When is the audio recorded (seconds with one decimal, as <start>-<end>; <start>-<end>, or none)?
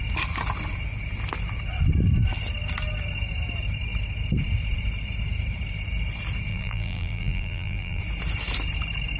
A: 0.0-6.5; 8.0-9.2